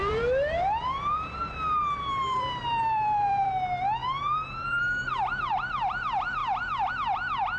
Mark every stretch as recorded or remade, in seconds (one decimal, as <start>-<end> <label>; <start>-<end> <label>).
0.0-3.5 remade; 3.5-4.0 recorded; 4.0-4.8 remade; 4.8-7.6 recorded